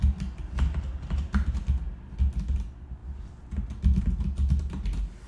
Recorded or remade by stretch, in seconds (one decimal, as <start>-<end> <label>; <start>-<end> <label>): 0.0-5.3 recorded

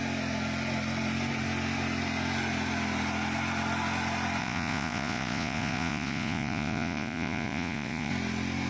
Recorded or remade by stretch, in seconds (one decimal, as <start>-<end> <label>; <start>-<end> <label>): 0.0-4.4 recorded; 4.4-8.1 remade; 8.1-8.7 recorded

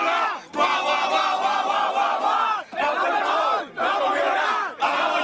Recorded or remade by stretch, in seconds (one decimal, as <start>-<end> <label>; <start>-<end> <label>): 0.0-1.3 recorded; 1.3-4.4 remade; 4.4-5.2 recorded

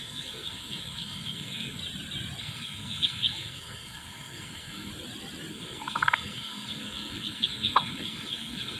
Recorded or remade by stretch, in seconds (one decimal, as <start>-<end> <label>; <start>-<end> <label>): 0.0-1.8 remade; 1.8-2.4 recorded; 2.4-4.9 remade; 4.9-5.5 recorded; 5.5-8.8 remade